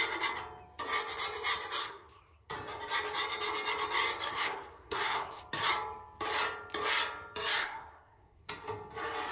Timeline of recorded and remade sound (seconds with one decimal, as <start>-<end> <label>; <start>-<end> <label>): 0.0-1.8 recorded; 1.8-2.5 remade; 2.5-4.3 recorded; 4.3-5.4 remade; 5.4-7.6 recorded; 7.6-8.5 remade; 8.5-9.3 recorded